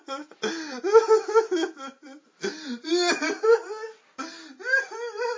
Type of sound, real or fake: real